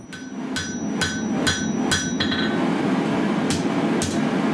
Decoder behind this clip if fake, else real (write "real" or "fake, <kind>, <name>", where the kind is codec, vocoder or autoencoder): real